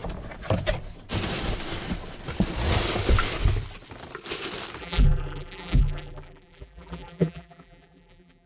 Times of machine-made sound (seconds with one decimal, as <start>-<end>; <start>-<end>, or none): 4.8-8.5